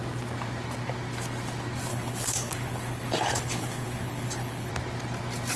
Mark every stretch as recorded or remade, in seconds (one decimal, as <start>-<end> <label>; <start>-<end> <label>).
0.0-1.9 recorded; 1.9-4.7 remade; 4.7-5.6 recorded